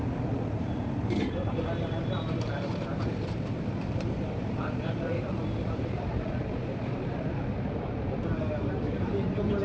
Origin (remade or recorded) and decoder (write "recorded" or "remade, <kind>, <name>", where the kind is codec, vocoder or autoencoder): remade, vocoder, BigVGAN v2